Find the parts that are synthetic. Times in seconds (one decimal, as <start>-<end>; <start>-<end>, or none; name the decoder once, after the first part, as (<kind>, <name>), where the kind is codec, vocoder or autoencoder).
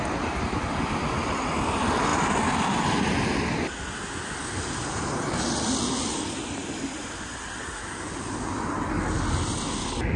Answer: none